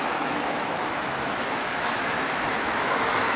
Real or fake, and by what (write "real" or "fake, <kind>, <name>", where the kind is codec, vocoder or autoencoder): fake, autoencoder, DAC-VAE